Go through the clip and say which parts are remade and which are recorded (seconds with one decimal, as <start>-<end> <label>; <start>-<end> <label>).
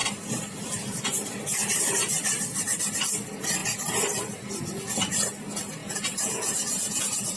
0.0-5.8 recorded; 5.8-7.0 remade; 7.0-7.4 recorded